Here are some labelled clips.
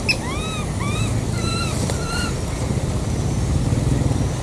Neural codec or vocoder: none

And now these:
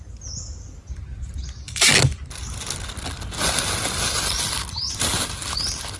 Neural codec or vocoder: none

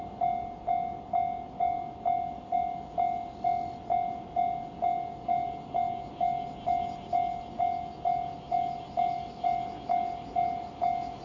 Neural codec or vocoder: none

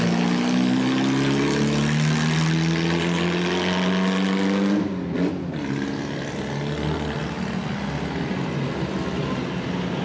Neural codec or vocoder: none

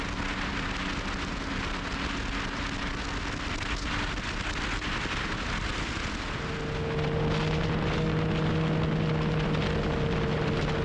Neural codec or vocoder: none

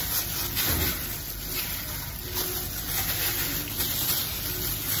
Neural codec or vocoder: none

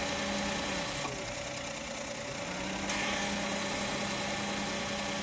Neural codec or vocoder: none